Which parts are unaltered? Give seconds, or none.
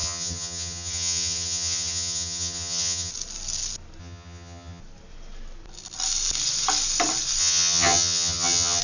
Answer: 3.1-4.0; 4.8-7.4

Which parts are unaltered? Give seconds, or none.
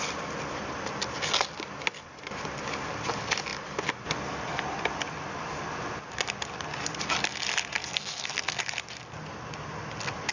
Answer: 0.0-7.8; 8.5-10.3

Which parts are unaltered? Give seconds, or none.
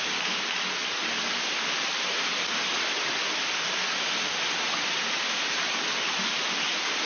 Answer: 0.0-7.1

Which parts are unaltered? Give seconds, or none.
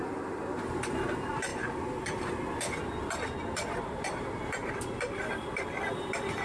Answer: 0.0-6.4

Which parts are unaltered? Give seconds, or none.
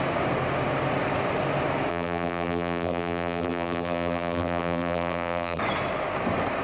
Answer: 0.0-1.9; 5.6-6.6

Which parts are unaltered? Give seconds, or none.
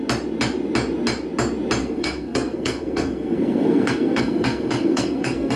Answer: 0.0-1.8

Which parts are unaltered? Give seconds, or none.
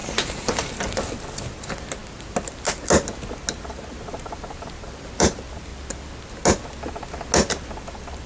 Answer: 0.7-8.3